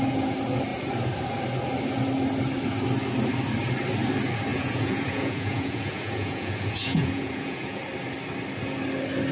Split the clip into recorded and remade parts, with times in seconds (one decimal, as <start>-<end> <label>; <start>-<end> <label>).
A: 0.0-4.5 recorded; 4.5-7.8 remade; 7.8-9.3 recorded